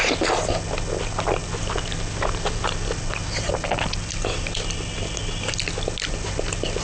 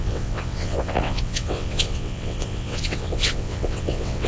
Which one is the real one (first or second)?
first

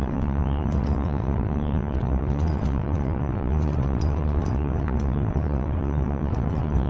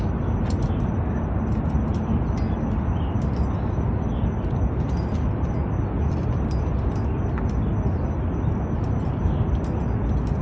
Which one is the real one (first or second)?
second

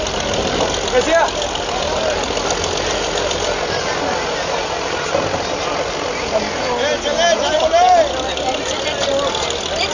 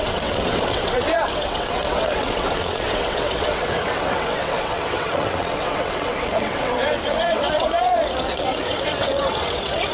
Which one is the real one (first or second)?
first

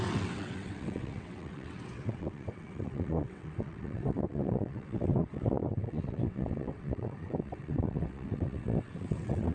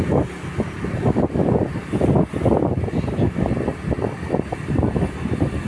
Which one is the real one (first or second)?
second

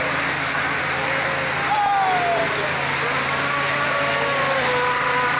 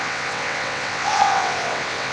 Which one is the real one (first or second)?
first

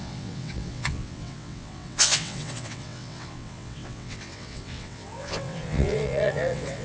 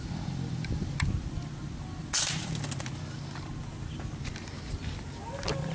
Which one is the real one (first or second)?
second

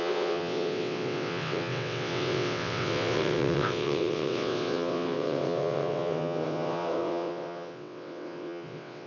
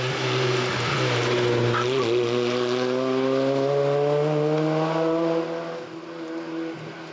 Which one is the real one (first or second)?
second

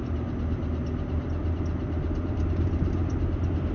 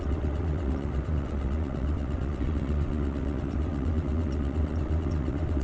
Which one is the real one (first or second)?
first